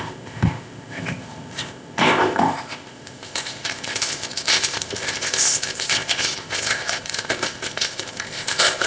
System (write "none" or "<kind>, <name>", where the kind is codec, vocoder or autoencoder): codec, ZipCodec